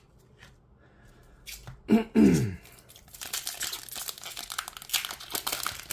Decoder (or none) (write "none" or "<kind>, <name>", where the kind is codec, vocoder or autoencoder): none